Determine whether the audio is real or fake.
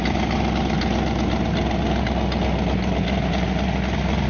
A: real